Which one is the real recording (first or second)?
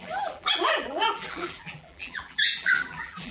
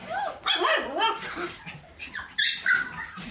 second